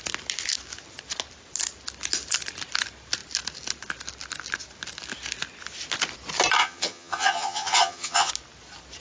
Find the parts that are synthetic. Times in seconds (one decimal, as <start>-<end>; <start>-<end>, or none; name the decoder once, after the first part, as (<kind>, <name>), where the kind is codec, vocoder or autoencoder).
6.6-8.3 (vocoder, HiFi-GAN)